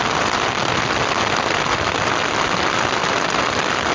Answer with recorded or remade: recorded